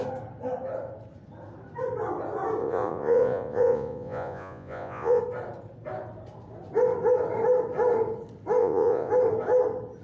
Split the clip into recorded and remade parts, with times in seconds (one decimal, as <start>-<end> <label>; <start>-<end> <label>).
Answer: 0.0-2.6 recorded; 2.6-5.2 remade; 5.2-8.6 recorded; 8.6-9.1 remade; 9.1-10.0 recorded